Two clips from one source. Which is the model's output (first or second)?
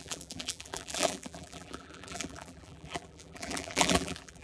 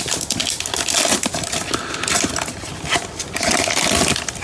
first